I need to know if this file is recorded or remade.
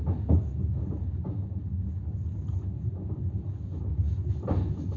recorded